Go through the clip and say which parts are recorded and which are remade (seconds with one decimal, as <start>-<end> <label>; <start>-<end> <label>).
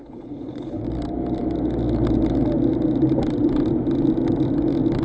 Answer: 0.0-0.8 remade; 0.8-5.0 recorded